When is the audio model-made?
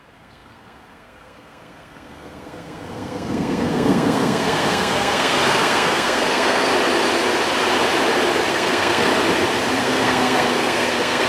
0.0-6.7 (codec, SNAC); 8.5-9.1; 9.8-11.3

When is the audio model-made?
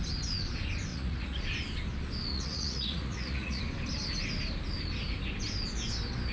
0.9-1.4 (vocoder, Vocos); 2.3-3.6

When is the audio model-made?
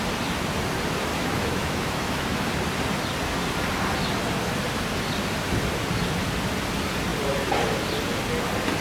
1.1-2.5 (autoencoder, DAC-VAE)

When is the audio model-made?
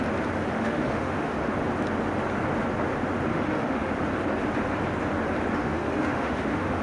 0.5-1.5 (autoencoder, DAC-VAE); 3.3-3.9; 5.6-6.8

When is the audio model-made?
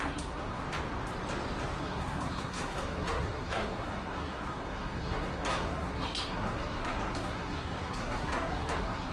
0.0-0.6 (codec, SNAC); 1.8-9.1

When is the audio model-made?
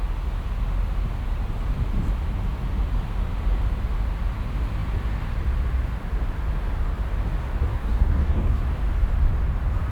7.7-8.6 (codec, DAC)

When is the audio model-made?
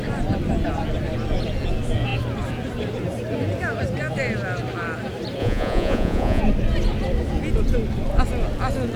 5.4-6.4 (vocoder, Vocos)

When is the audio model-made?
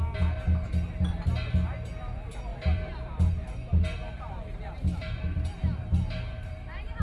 2.5-7.0 (vocoder, BigVGAN v2)